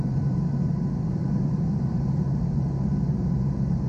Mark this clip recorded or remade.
remade